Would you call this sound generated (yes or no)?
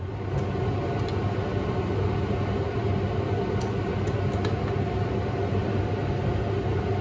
no